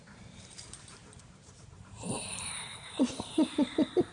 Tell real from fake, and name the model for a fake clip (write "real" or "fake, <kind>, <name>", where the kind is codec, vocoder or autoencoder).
fake, vocoder, BigVGAN v2